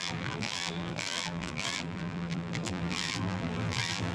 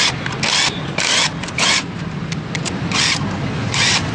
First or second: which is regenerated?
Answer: first